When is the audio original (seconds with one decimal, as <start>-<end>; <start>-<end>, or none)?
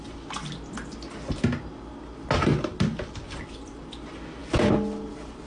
0.0-5.5